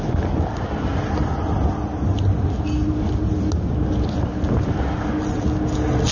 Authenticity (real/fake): real